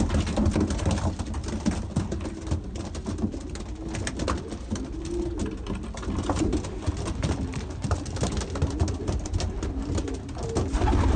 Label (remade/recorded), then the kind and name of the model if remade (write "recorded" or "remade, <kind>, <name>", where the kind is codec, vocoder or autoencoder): recorded